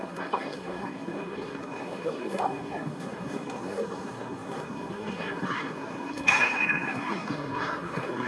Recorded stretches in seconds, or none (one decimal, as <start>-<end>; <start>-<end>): none